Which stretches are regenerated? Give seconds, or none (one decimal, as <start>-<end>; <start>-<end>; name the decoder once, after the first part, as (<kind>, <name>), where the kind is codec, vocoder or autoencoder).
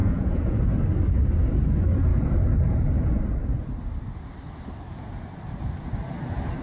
0.0-0.6 (vocoder, Vocos)